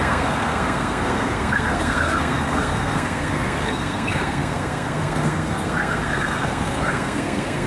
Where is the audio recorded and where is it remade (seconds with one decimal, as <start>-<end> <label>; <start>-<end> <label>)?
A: 0.0-7.7 remade